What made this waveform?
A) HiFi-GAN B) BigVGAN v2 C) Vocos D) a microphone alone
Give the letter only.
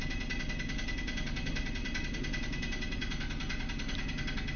D